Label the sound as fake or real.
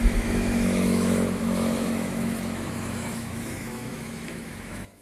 fake